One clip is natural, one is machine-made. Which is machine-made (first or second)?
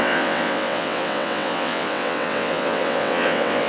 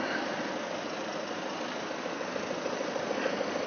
first